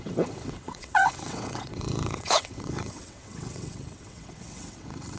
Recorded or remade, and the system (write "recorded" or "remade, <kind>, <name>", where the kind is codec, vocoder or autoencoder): remade, vocoder, WaveNeXt